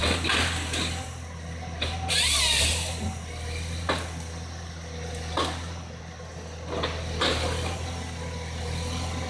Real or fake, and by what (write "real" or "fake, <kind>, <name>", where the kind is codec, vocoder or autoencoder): real